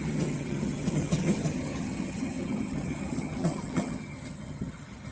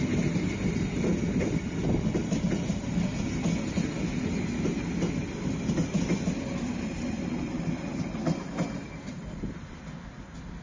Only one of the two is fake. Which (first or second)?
first